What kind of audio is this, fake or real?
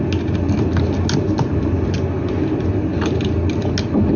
real